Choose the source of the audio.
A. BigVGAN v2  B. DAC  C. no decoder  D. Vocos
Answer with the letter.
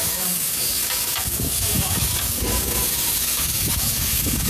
B